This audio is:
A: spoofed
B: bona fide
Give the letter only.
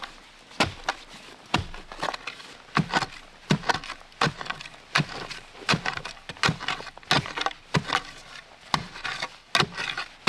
B